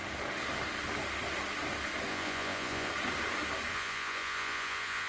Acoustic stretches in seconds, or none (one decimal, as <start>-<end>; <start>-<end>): 0.0-2.1; 2.9-3.7